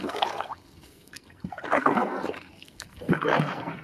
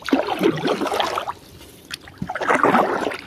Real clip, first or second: second